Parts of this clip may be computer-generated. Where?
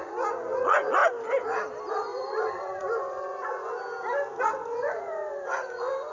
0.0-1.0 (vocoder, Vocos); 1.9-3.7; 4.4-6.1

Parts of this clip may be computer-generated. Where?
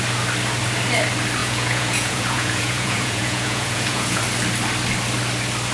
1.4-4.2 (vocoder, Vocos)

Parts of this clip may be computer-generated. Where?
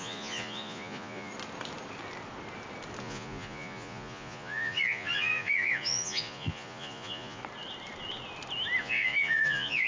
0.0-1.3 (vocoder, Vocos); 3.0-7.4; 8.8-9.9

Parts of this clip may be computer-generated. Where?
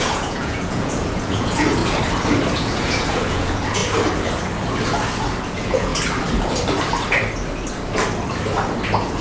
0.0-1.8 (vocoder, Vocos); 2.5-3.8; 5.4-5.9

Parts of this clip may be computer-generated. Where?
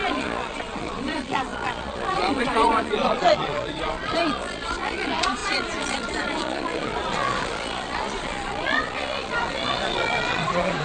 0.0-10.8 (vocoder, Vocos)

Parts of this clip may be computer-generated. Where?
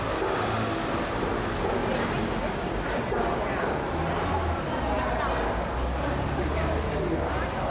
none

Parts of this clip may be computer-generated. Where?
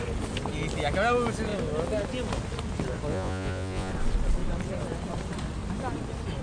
3.1-3.9 (vocoder, Vocos)